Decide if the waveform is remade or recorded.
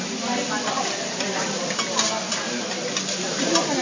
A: recorded